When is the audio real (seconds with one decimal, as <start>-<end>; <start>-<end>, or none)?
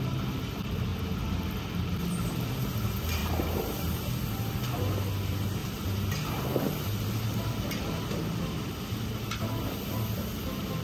0.0-3.2; 4.1-5.6; 6.4-10.8